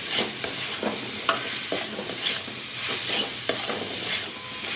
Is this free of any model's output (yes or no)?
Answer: yes